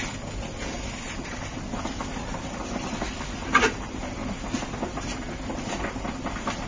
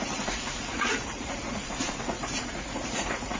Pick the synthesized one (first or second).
second